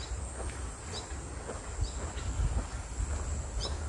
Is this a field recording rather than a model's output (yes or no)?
yes